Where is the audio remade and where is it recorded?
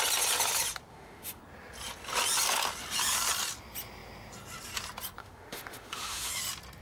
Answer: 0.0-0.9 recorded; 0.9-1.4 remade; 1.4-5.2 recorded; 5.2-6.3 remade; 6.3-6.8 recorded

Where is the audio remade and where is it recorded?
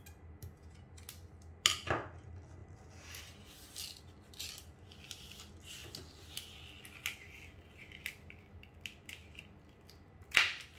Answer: 0.0-10.8 recorded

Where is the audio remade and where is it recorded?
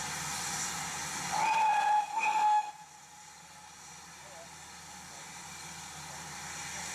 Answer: 0.0-2.1 recorded; 2.1-2.7 remade; 2.7-6.9 recorded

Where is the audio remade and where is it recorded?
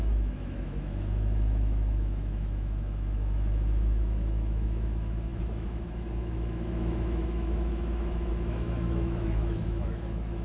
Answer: 0.0-10.4 remade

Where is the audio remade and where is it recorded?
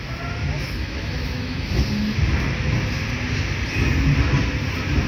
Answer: 0.0-0.8 recorded; 0.8-1.8 remade; 1.8-5.1 recorded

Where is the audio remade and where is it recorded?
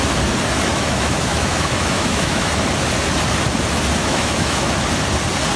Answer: 0.0-0.7 recorded; 0.7-2.5 remade; 2.5-4.0 recorded; 4.0-4.7 remade; 4.7-5.6 recorded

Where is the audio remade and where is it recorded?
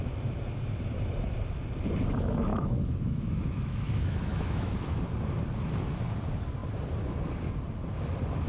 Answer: 0.0-2.5 recorded; 2.5-5.0 remade; 5.0-8.5 recorded